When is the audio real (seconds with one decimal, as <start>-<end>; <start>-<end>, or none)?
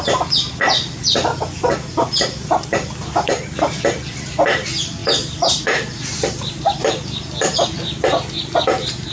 0.0-5.0; 6.9-9.1